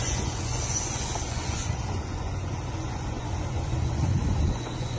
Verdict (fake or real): fake